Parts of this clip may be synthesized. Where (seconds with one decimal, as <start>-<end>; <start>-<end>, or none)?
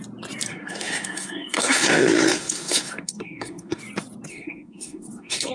0.5-3.8; 4.3-5.5